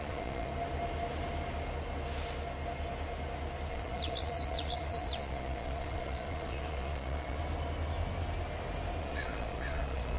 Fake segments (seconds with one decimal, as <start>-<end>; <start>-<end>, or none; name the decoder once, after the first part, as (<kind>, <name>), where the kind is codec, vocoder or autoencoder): 0.0-0.5 (vocoder, Vocos); 3.7-7.4; 9.0-10.2